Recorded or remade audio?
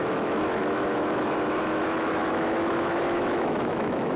remade